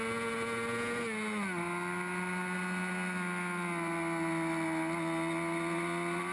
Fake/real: real